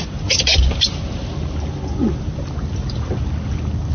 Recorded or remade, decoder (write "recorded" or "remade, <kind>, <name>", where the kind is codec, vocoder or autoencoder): recorded